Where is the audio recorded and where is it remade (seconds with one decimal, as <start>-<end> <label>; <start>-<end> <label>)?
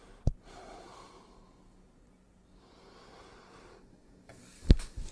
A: 0.0-3.7 recorded; 3.7-5.1 remade